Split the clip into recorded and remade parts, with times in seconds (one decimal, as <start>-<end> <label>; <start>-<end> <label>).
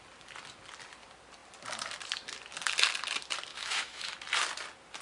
0.0-3.5 recorded; 3.5-4.1 remade; 4.1-5.0 recorded